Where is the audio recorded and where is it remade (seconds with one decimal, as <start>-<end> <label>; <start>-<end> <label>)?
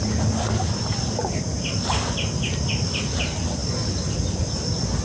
0.0-5.0 recorded